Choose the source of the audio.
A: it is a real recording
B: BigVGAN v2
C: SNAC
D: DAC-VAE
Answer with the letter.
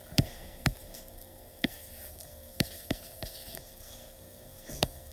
C